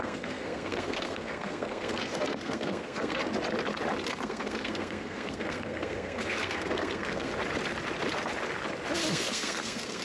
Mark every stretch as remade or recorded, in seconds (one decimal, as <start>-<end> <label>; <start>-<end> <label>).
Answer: 0.0-3.2 remade; 3.2-4.1 recorded; 4.1-7.3 remade; 7.3-9.1 recorded; 9.1-10.0 remade